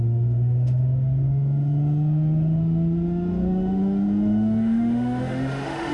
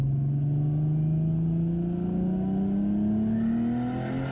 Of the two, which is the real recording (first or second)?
second